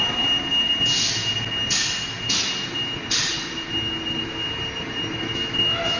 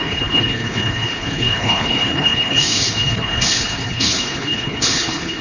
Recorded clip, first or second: first